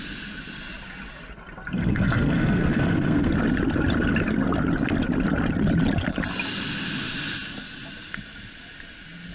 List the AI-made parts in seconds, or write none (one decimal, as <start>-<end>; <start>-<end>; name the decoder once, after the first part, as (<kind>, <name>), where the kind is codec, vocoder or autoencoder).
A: 1.8-3.3 (codec, SNAC)